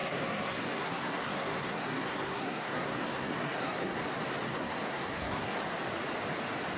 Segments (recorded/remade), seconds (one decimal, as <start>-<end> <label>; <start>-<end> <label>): 0.0-4.1 remade; 4.1-4.5 recorded; 4.5-5.6 remade; 5.6-6.8 recorded